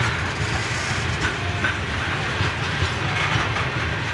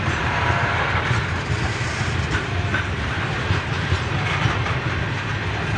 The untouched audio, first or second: first